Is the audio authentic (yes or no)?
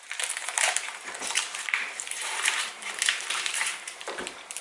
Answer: no